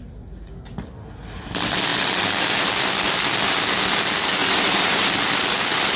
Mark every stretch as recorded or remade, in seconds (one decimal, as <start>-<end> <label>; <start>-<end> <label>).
0.0-4.4 recorded; 4.4-5.1 remade; 5.1-6.0 recorded

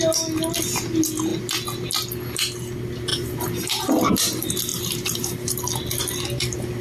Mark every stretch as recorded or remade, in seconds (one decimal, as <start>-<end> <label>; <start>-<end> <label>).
0.0-3.1 recorded; 3.1-4.1 remade; 4.1-4.7 recorded; 4.7-5.6 remade; 5.6-6.8 recorded